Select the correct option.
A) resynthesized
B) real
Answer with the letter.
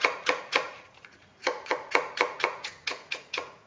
A